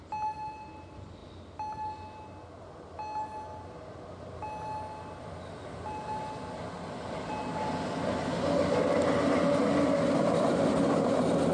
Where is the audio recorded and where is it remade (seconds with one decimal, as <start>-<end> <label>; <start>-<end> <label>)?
0.0-11.5 recorded